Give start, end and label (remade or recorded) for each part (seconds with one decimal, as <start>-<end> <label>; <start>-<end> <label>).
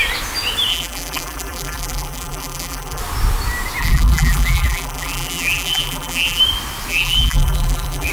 0.0-0.7 recorded; 0.7-3.0 remade; 3.0-3.8 recorded; 3.8-6.4 remade; 6.4-6.9 recorded; 6.9-8.1 remade